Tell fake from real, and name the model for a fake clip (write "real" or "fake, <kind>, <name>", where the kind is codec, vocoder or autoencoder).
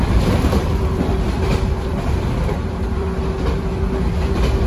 fake, vocoder, BigVGAN v2